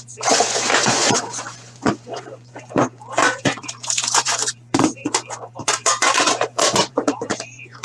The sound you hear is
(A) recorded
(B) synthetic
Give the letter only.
B